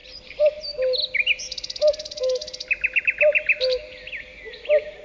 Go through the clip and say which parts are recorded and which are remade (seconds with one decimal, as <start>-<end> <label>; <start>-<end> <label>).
0.0-5.0 recorded